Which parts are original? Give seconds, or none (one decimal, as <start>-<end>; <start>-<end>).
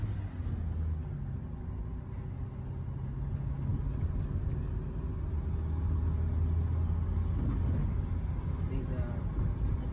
0.0-9.9